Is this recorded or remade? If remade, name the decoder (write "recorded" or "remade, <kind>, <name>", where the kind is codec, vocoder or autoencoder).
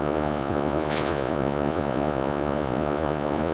remade, vocoder, Vocos